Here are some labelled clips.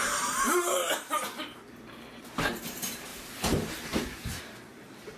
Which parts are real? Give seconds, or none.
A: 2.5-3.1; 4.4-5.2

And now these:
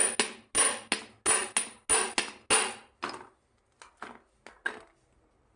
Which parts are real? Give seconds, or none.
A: 0.0-5.6